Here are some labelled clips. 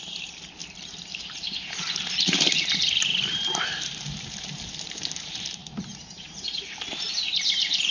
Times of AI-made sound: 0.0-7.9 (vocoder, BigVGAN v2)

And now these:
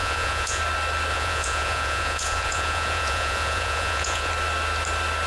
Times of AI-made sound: 0.0-0.6 (vocoder, Vocos); 1.1-4.3

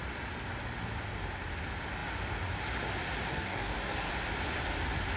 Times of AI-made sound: 3.3-4.1 (codec, DAC)

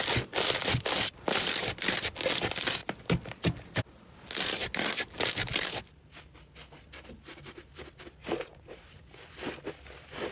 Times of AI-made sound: 8.2-9.1 (vocoder, Vocos)

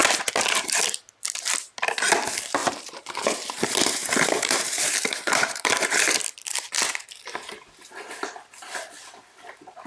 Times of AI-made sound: 2.6-6.1 (vocoder, BigVGAN v2)

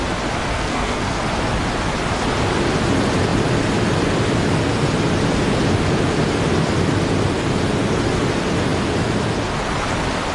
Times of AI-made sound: 0.5-1.2 (codec, SNAC)

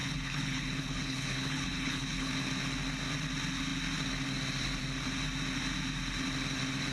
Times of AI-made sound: 0.0-2.3 (codec, HILCodec)

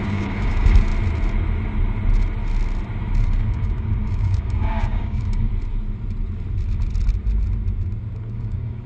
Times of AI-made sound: 0.0-0.9 (codec, DAC); 3.2-5.5; 8.3-8.9